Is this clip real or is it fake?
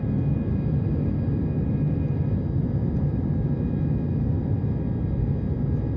real